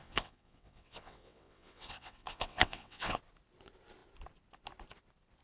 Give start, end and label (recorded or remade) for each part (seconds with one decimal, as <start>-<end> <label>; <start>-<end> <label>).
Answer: 0.0-3.2 remade; 3.2-5.4 recorded